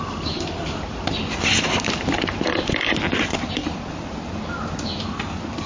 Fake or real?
real